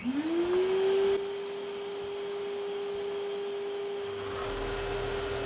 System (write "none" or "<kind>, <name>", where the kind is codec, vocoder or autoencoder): none